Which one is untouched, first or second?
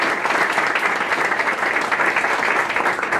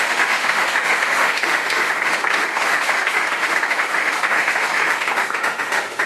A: first